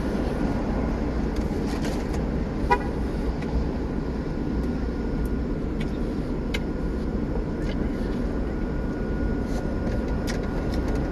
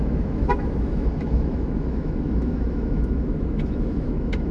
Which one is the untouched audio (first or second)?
first